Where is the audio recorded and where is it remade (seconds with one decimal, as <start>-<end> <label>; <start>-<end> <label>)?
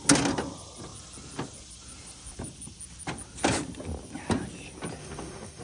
0.0-5.0 recorded; 5.0-5.6 remade